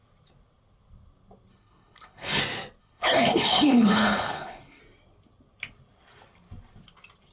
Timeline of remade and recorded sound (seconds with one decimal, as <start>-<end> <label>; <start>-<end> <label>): 0.0-1.5 recorded; 1.5-2.4 remade; 2.4-2.8 recorded; 2.8-4.8 remade; 4.8-7.3 recorded